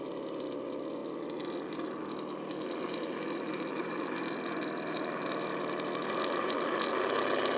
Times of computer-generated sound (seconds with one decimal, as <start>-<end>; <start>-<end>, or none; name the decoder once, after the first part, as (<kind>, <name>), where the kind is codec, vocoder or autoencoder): none